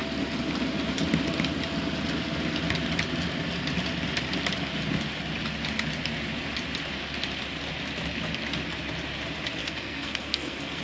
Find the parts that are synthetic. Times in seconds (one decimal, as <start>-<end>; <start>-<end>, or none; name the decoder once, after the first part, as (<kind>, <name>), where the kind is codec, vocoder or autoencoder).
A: 9.6-10.8 (codec, SNAC)